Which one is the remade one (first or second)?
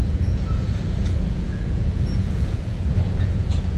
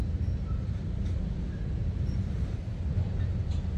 first